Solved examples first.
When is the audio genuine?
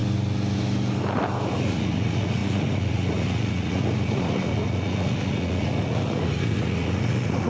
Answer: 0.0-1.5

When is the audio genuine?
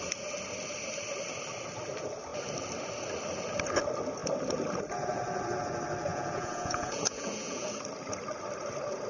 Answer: 0.0-6.1; 7.8-9.1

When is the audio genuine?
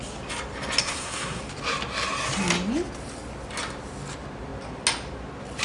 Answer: 0.0-0.8; 1.4-5.6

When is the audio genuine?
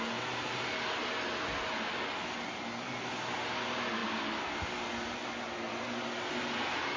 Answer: 0.0-7.0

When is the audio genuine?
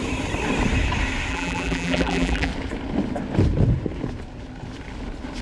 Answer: 0.0-1.3; 2.5-5.4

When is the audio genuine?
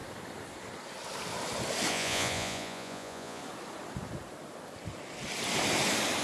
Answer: 0.0-1.9; 3.4-6.2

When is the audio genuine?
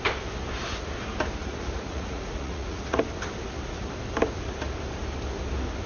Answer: 0.0-1.4; 3.0-5.9